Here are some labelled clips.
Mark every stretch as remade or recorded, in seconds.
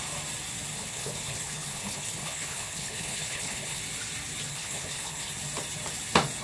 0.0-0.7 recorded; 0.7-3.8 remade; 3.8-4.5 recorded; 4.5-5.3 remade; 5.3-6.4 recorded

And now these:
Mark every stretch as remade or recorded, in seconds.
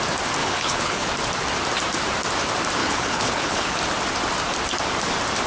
0.0-0.4 recorded; 0.4-1.1 remade; 1.1-2.8 recorded; 2.8-3.7 remade; 3.7-5.5 recorded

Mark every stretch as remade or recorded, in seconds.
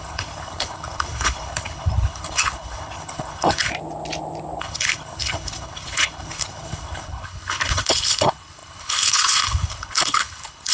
0.0-3.7 remade; 3.7-4.6 recorded; 4.6-10.7 remade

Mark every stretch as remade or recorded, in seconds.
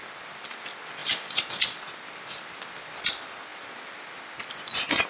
0.0-5.1 recorded